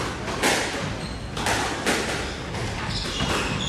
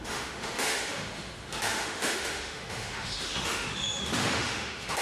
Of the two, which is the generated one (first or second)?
second